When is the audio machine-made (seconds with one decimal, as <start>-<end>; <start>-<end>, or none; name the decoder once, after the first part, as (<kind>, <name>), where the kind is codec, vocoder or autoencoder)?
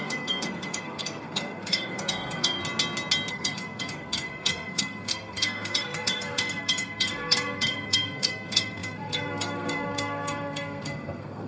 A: 0.0-2.6 (codec, SNAC); 3.3-11.5